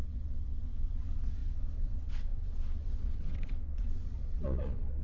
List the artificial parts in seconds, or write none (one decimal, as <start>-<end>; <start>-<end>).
0.0-5.0

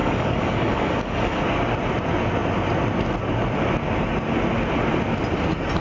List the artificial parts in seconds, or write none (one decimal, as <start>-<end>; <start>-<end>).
0.0-1.4

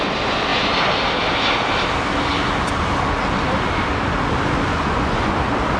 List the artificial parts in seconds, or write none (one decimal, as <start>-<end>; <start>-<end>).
4.7-5.3

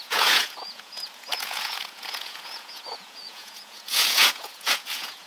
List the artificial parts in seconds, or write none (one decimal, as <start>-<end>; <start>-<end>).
0.0-5.3

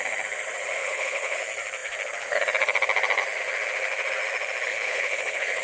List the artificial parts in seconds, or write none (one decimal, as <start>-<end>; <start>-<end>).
0.8-1.4; 4.7-5.6

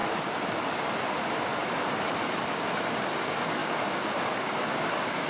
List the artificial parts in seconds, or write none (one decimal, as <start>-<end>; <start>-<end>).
3.6-5.3

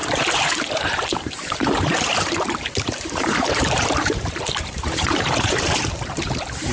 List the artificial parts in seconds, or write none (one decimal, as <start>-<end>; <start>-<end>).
0.0-6.7